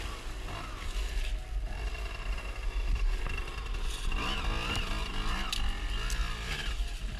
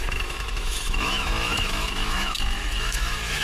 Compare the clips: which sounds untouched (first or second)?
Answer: first